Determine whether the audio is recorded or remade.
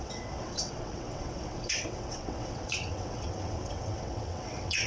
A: remade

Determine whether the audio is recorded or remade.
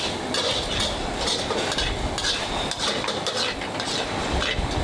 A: recorded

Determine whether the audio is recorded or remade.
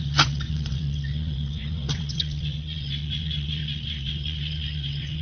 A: remade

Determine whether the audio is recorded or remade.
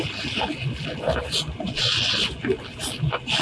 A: recorded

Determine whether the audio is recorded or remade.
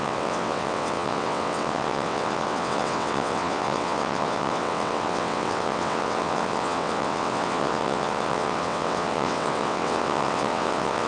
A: remade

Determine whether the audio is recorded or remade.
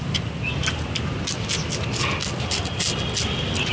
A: recorded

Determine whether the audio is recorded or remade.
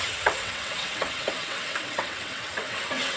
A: remade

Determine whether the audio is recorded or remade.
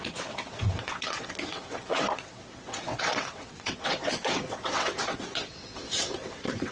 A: remade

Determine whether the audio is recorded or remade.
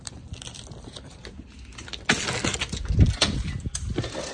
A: recorded